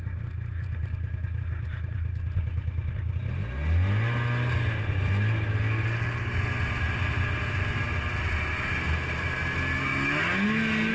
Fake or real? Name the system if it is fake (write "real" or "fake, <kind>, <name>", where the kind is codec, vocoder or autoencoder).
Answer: real